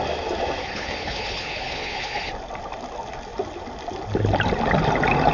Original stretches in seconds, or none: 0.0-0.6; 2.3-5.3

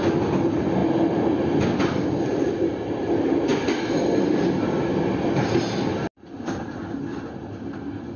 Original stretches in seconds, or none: 0.0-8.2